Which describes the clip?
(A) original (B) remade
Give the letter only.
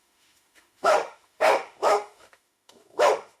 B